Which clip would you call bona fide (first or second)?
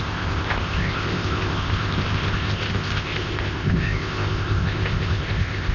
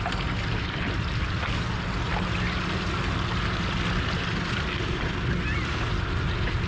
second